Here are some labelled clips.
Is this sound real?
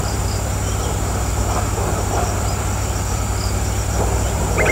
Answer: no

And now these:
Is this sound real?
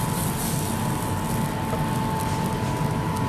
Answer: yes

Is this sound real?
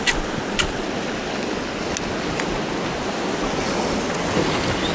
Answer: yes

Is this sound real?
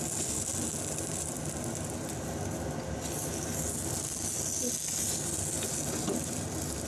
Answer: yes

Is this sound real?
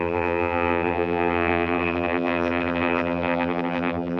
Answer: no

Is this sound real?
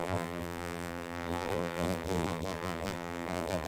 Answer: no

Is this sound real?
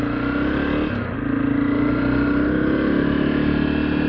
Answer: yes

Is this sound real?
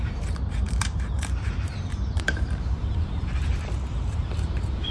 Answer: no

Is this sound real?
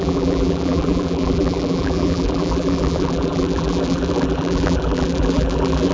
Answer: no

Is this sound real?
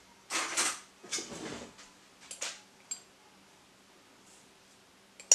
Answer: yes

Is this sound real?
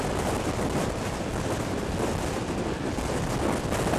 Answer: yes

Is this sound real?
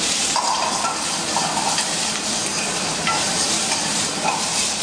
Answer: no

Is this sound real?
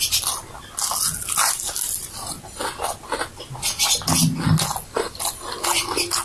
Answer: yes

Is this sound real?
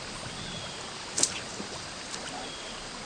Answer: yes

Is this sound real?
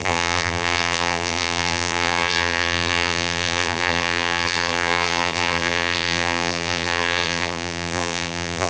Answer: no